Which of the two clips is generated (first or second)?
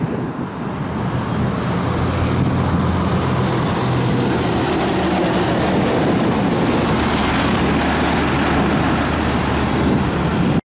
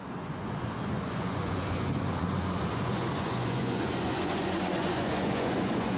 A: second